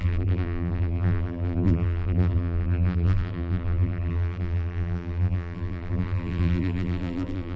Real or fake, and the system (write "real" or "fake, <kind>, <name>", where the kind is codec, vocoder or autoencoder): fake, vocoder, BigVGAN v2